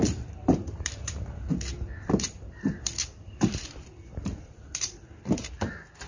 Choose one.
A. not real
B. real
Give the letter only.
A